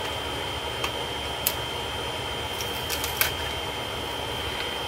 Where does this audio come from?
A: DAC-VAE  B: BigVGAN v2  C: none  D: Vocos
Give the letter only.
C